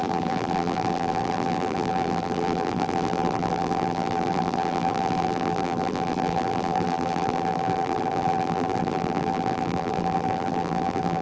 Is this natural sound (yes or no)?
no